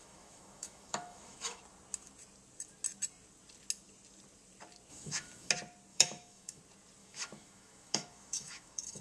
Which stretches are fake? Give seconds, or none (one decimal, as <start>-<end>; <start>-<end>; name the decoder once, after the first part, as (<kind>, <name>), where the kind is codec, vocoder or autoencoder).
0.0-1.6 (autoencoder, DAC-VAE); 4.9-5.5; 5.9-6.6; 7.0-9.0